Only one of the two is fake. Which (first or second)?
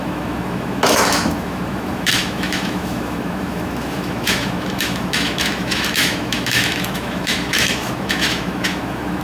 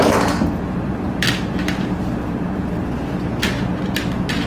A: first